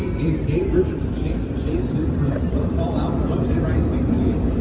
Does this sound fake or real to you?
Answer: fake